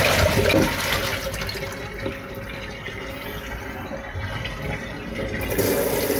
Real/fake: real